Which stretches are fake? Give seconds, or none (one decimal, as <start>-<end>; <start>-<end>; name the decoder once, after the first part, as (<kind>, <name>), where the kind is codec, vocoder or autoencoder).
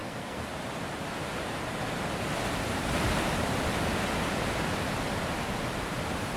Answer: 0.0-0.5 (codec, SNAC)